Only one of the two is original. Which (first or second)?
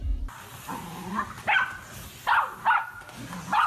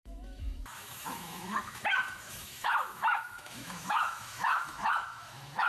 first